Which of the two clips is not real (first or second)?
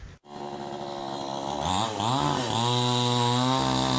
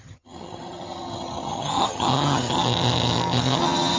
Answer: second